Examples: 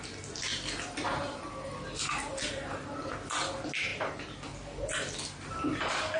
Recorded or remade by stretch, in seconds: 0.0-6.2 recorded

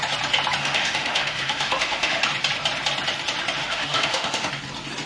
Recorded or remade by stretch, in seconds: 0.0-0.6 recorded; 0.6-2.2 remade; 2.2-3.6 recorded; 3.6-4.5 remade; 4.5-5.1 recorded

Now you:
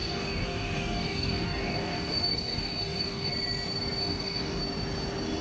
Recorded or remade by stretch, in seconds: 0.0-3.3 remade; 3.3-4.0 recorded; 4.0-4.6 remade; 4.6-5.4 recorded

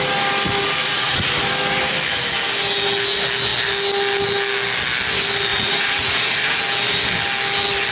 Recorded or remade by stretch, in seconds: 0.0-0.8 recorded; 0.8-1.3 remade; 1.3-5.5 recorded; 5.5-6.6 remade; 6.6-7.9 recorded

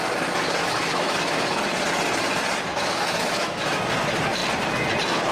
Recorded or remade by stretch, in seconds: 0.0-0.6 recorded; 0.6-1.6 remade; 1.6-2.7 recorded; 2.7-3.8 remade; 3.8-5.3 recorded